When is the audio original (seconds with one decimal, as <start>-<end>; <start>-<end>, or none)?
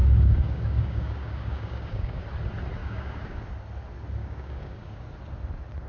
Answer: 2.2-2.8; 3.4-4.2; 5.0-5.9